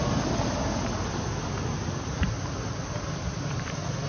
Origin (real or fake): real